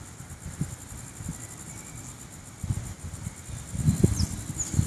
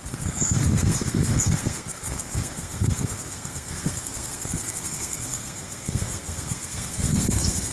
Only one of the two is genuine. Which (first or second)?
first